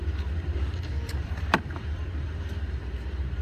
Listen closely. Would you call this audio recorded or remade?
remade